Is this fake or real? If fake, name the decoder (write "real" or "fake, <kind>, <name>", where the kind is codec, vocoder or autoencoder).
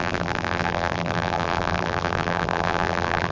fake, vocoder, BigVGAN v2